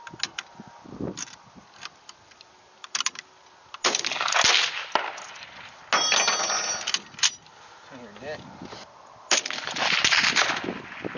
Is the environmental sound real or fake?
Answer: real